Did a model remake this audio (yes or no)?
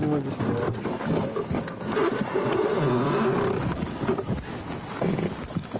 no